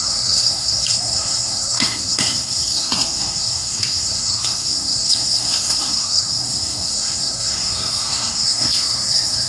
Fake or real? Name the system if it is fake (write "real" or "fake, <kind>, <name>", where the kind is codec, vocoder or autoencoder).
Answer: fake, codec, SNAC